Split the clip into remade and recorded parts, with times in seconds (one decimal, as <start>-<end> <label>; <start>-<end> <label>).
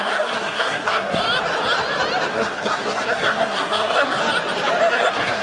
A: 0.0-1.2 remade; 1.2-2.3 recorded; 2.3-4.2 remade; 4.2-4.9 recorded; 4.9-5.4 remade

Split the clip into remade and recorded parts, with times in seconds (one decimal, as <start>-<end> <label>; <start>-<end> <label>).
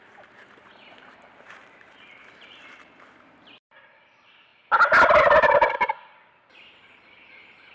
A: 0.0-4.5 remade; 4.5-6.3 recorded; 6.3-7.7 remade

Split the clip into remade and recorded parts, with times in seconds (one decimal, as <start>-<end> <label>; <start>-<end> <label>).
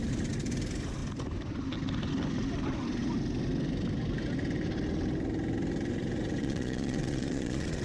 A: 0.0-6.4 recorded; 6.4-7.8 remade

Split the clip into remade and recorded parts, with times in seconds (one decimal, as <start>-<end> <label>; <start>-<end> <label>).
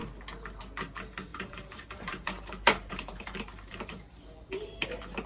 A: 0.0-1.3 recorded; 1.3-4.5 remade; 4.5-5.3 recorded